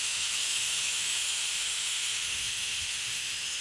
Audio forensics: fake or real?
fake